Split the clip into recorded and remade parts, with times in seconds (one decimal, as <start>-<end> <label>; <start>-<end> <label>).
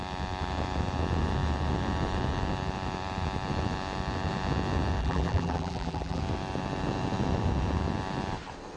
0.0-5.0 recorded; 5.0-6.2 remade; 6.2-8.8 recorded